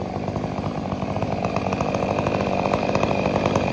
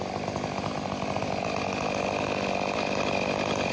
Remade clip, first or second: first